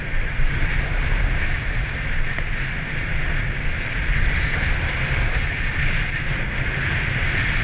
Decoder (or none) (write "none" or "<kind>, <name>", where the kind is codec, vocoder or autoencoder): none